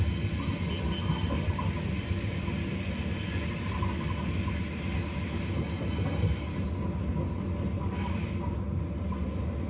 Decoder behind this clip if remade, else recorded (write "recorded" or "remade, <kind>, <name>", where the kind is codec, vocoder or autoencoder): recorded